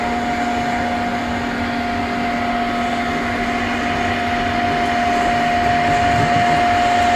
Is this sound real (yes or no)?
yes